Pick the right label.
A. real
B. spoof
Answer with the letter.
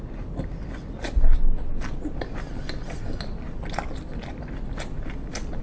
A